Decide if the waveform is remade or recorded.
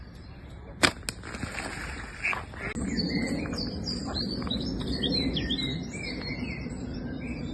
recorded